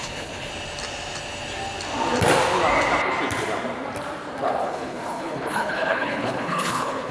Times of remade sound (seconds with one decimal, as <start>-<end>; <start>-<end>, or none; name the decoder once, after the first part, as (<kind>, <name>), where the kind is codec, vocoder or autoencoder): 0.0-0.5 (codec, HILCodec); 4.6-7.1